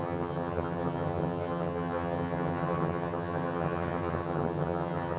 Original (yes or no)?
no